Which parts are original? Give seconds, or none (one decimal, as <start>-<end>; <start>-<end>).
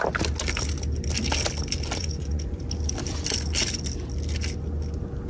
0.0-2.0; 2.6-5.3